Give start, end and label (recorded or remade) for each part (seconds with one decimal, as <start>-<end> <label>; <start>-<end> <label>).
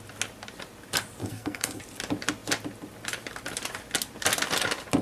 0.0-1.2 recorded; 1.2-1.8 remade; 1.8-5.0 recorded